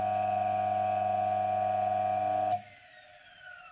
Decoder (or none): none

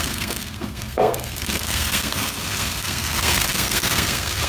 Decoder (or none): codec, SNAC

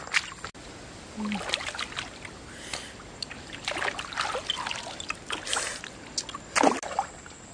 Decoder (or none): none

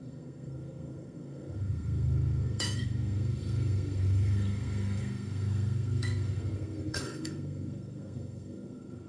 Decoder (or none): codec, SNAC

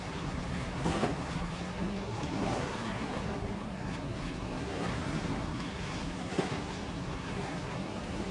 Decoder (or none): codec, SNAC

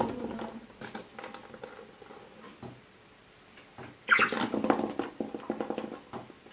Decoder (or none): none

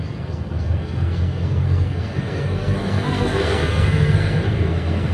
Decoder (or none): codec, SNAC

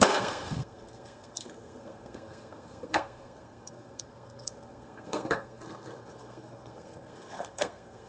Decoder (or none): codec, SNAC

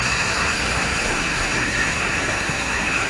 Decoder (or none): codec, SNAC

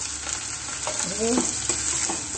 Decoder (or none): none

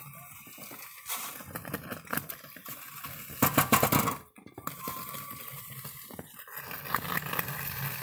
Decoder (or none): none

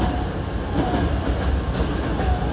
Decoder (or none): none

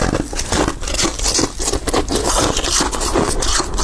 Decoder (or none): none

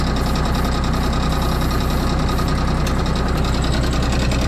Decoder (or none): none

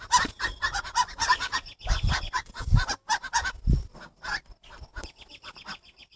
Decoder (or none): none